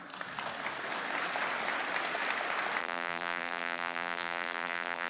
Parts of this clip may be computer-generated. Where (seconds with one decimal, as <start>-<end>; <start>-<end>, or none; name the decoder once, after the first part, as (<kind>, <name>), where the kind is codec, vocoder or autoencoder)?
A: 2.8-5.1 (vocoder, BigVGAN v2)